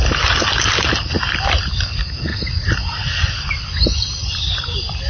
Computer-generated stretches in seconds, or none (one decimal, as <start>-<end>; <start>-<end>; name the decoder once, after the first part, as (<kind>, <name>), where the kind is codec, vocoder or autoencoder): 0.0-5.1 (vocoder, BigVGAN v2)